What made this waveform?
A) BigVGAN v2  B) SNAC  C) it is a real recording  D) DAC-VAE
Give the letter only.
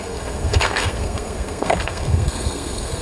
B